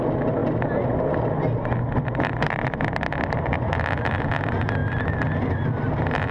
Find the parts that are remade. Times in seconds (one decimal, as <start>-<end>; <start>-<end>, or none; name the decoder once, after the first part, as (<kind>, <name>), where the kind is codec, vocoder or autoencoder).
none